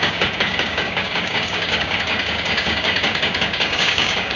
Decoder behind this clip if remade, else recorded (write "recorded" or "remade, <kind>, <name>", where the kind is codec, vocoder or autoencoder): remade, codec, DAC